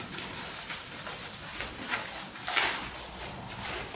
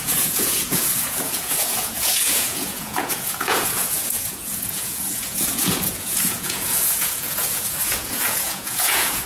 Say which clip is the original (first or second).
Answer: first